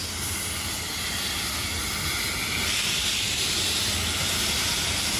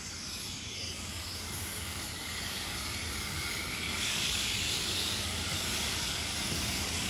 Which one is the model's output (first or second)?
second